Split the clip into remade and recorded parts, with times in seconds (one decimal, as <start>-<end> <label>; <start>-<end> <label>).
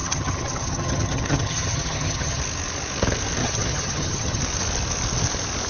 0.0-2.4 remade; 2.4-3.4 recorded; 3.4-4.4 remade; 4.4-5.7 recorded